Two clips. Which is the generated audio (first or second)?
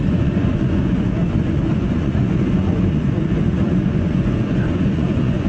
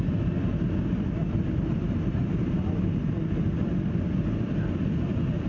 first